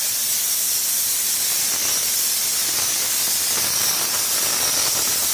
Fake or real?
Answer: real